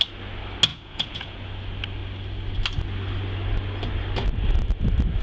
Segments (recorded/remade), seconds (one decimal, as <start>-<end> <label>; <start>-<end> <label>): 0.0-0.7 recorded; 0.7-1.4 remade; 1.4-5.2 recorded